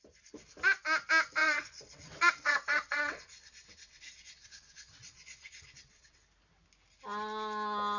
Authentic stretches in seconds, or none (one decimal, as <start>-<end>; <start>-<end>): 0.0-1.4; 6.2-8.0